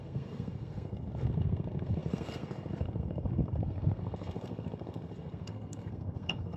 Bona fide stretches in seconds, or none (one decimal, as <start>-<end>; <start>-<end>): none